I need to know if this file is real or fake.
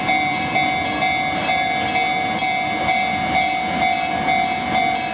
fake